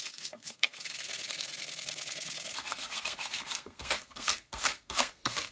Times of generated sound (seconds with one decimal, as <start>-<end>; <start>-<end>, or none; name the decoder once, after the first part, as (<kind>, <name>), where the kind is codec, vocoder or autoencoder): 0.0-5.5 (codec, SNAC)